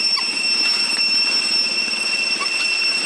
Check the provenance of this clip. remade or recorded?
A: recorded